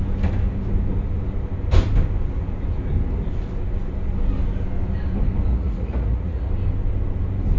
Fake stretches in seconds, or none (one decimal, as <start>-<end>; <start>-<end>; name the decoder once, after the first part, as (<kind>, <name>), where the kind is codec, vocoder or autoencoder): 5.5-6.5 (vocoder, Vocos)